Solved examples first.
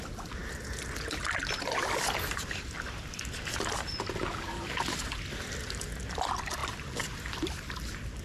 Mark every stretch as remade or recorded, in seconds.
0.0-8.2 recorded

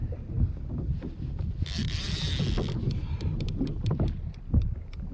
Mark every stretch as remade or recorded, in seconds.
0.0-1.8 recorded; 1.8-2.4 remade; 2.4-5.1 recorded

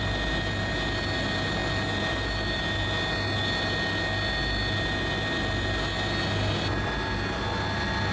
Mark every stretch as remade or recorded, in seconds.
0.0-8.1 recorded

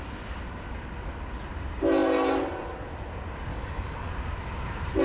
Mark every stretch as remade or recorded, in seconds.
0.0-3.5 recorded; 3.5-4.1 remade; 4.1-5.0 recorded

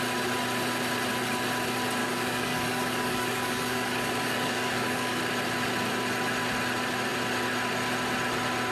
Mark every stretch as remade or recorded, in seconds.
0.0-2.0 recorded; 2.0-5.2 remade; 5.2-8.7 recorded